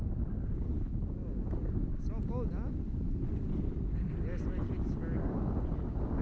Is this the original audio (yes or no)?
yes